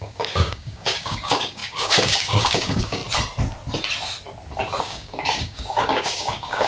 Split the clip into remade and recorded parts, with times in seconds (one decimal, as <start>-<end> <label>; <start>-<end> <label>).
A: 0.0-3.0 remade; 3.0-4.8 recorded; 4.8-6.7 remade